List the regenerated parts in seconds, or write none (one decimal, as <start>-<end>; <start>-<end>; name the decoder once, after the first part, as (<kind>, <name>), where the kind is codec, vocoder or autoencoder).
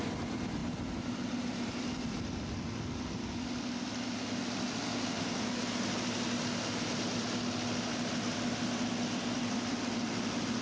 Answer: none